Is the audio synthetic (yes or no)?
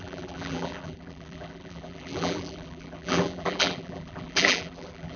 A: yes